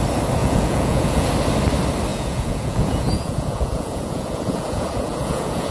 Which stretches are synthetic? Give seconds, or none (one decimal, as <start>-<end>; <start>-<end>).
0.4-1.3; 2.1-5.7